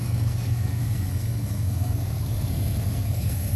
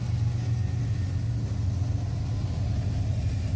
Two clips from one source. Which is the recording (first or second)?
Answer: second